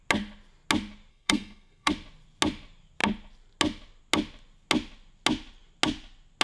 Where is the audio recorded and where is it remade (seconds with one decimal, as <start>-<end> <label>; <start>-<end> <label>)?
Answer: 0.0-1.1 recorded; 1.1-1.9 remade; 1.9-6.4 recorded